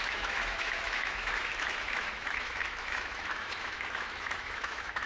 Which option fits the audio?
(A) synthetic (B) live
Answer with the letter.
A